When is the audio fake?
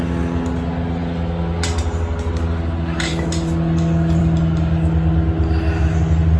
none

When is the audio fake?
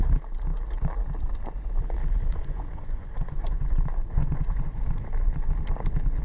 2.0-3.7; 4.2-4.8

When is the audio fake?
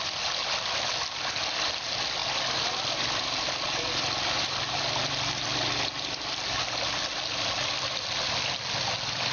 none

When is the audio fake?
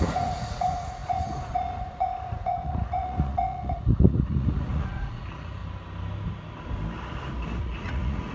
0.0-5.6; 7.6-8.3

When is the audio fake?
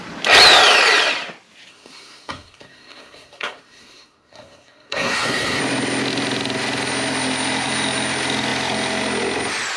1.7-5.6